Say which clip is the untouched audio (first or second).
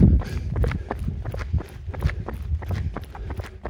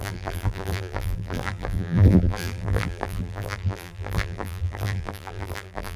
first